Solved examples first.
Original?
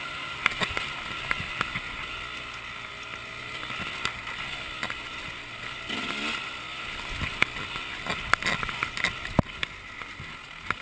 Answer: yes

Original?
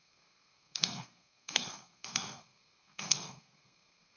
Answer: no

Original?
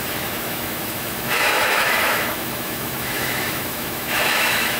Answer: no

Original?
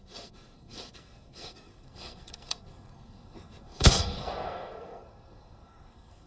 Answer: no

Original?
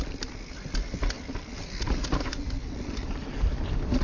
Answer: yes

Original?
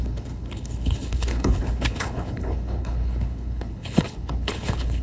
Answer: no